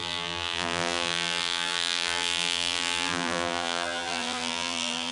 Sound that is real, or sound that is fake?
fake